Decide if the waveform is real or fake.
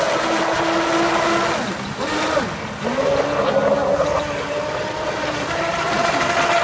real